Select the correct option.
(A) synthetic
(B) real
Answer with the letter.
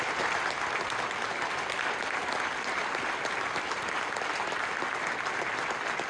B